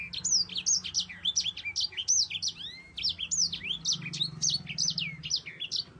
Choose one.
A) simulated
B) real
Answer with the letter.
B